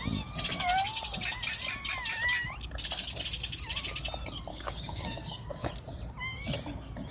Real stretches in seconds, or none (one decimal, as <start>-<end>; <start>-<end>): 0.0-4.5; 5.7-7.1